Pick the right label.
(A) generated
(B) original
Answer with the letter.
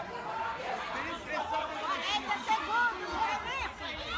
B